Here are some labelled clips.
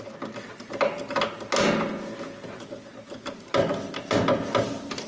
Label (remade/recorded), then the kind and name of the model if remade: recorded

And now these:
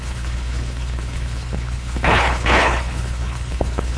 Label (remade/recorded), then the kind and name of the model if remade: remade, codec, HILCodec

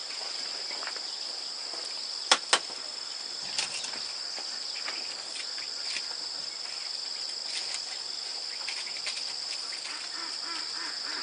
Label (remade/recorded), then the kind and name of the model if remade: recorded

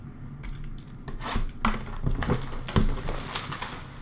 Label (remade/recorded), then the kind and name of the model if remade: recorded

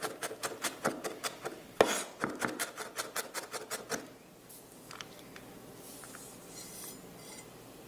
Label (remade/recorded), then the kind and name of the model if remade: recorded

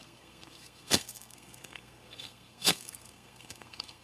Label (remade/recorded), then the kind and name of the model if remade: remade, codec, SNAC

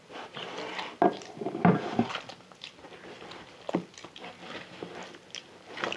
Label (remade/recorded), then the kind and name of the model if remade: recorded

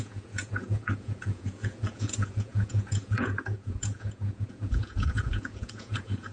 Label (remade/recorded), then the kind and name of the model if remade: remade, vocoder, Vocos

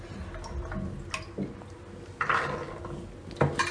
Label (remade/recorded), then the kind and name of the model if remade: recorded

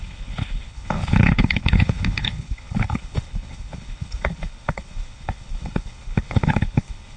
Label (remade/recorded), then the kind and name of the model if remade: remade, codec, HILCodec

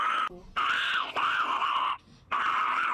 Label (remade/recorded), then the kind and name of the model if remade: recorded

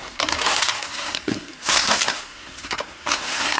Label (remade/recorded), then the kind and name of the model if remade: remade, codec, SNAC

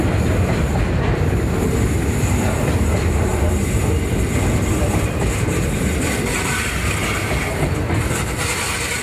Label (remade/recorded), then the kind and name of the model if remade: remade, vocoder, BigVGAN v2